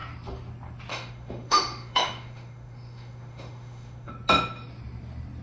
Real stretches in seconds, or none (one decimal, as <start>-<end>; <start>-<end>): 0.0-0.9; 4.1-5.4